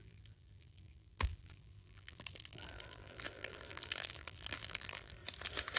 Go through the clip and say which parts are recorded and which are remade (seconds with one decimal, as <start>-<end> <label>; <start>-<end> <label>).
0.0-5.2 remade; 5.2-5.8 recorded